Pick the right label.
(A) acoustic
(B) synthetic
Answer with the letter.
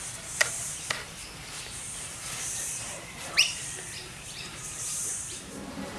B